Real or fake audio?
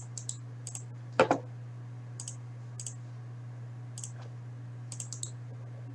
real